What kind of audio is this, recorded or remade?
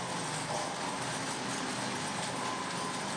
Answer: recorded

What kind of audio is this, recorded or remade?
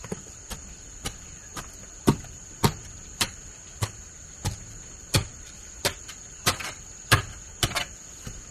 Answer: recorded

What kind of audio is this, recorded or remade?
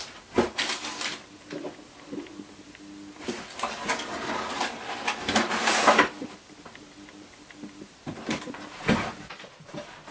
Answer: remade